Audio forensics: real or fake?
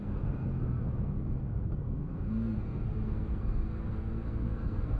fake